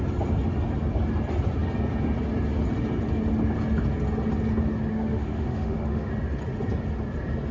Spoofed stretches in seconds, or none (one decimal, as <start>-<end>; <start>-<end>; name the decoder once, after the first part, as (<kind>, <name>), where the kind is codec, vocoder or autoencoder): 4.9-6.1 (autoencoder, DAC-VAE)